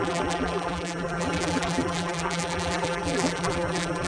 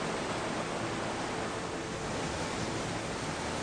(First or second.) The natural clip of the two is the second